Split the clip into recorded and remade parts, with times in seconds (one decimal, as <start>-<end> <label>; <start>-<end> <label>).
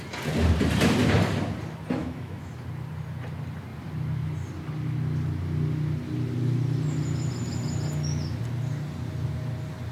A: 0.0-2.0 recorded; 2.0-2.5 remade; 2.5-9.9 recorded